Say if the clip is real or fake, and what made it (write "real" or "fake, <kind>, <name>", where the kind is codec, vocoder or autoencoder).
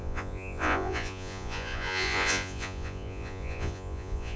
fake, vocoder, Vocos